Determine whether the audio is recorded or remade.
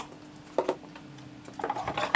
recorded